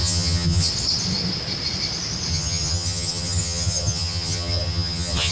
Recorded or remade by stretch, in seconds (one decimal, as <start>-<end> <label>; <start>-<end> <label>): 0.0-0.7 remade; 0.7-2.3 recorded; 2.3-5.3 remade

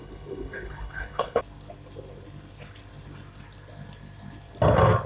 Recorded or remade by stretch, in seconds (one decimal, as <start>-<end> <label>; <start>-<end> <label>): 0.0-1.4 remade; 1.4-5.1 recorded

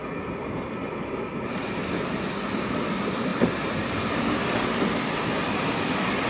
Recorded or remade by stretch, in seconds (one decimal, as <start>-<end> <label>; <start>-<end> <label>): 0.0-6.3 recorded